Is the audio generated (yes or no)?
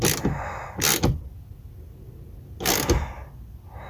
no